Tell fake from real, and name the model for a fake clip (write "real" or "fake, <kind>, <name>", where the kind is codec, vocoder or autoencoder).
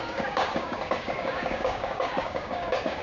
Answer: fake, codec, DAC